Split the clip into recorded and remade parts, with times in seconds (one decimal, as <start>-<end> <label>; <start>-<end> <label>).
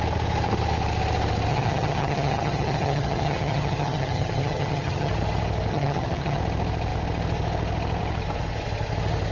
0.0-1.5 recorded; 1.5-5.1 remade; 5.1-5.7 recorded; 5.7-6.4 remade; 6.4-9.3 recorded